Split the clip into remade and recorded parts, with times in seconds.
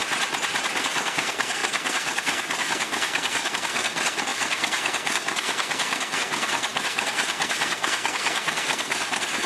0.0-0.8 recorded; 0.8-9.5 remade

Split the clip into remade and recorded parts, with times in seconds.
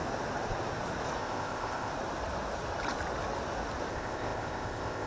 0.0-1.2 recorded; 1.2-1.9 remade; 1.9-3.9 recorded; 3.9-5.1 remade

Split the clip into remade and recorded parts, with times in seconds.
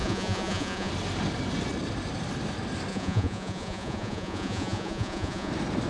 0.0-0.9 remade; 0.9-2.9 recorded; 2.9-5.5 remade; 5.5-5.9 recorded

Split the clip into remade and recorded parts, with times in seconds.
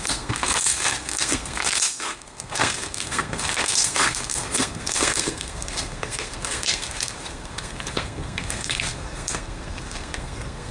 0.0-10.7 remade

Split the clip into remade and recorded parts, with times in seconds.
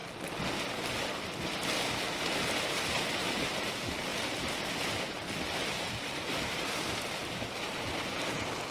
0.0-6.3 recorded; 6.3-7.4 remade; 7.4-8.7 recorded